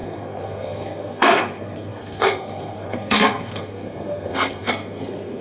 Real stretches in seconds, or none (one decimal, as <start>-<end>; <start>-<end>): none